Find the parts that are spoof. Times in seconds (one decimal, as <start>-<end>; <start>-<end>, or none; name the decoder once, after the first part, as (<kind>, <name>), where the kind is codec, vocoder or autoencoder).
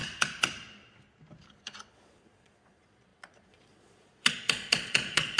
1.9-5.4 (vocoder, Vocos)